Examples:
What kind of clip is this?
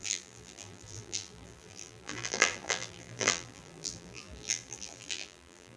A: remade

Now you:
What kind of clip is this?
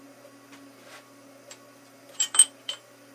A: remade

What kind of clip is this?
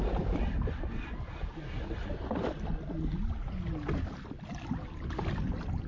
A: recorded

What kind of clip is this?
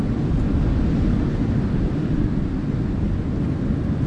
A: recorded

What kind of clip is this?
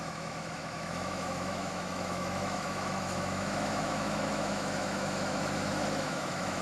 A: remade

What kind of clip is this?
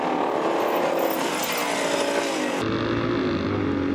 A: recorded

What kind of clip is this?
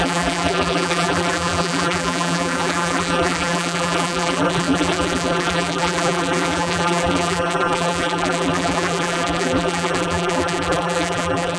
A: remade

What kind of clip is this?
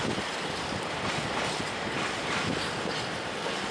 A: remade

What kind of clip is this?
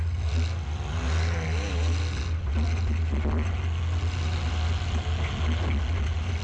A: recorded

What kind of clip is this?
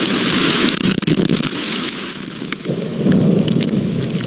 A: remade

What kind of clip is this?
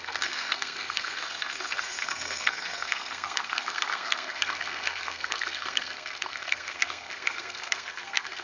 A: remade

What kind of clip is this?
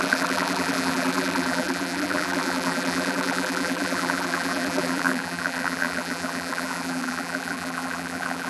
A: remade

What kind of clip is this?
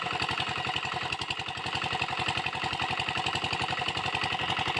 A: recorded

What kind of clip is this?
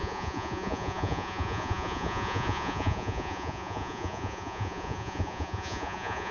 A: remade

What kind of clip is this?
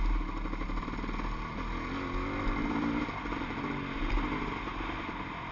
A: recorded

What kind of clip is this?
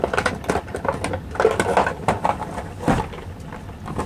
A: recorded